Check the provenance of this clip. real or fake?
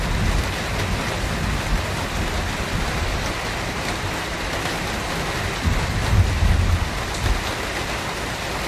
real